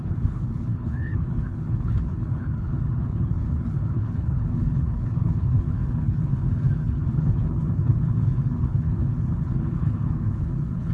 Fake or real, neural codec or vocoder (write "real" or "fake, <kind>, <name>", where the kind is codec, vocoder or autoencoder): fake, codec, HILCodec